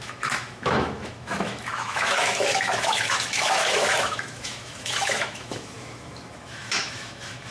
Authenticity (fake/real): fake